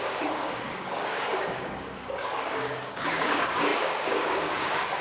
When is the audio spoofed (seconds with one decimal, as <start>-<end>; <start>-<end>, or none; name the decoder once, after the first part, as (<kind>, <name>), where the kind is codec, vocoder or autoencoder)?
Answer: 0.0-5.0 (codec, DAC)